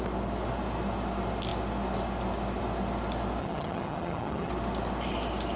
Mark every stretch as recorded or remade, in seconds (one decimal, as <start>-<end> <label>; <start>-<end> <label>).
0.0-3.4 recorded; 3.4-4.5 remade; 4.5-5.6 recorded